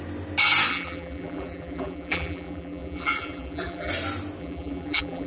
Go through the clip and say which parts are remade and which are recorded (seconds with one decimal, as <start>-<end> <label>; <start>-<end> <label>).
0.0-0.7 recorded; 0.7-3.9 remade; 3.9-4.4 recorded; 4.4-5.3 remade